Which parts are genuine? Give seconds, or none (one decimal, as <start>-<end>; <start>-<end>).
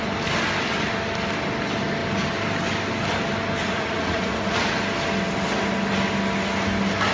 0.0-3.6; 4.7-7.1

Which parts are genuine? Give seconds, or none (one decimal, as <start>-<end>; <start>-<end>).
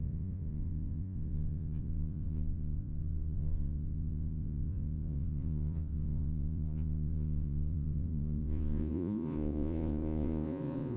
none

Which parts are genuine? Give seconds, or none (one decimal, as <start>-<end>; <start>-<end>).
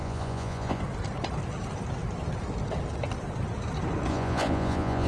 0.8-4.1